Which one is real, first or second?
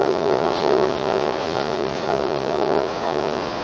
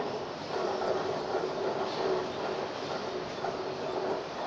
second